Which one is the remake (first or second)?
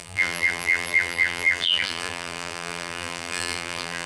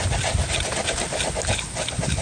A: first